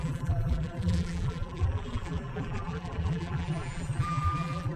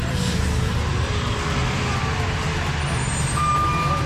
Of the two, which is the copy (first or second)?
first